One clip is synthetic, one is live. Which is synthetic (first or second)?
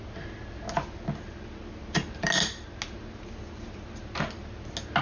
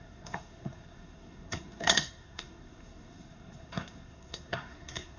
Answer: second